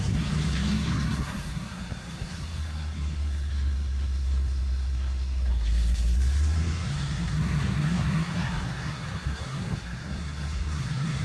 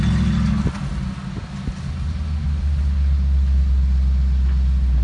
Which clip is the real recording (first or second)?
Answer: second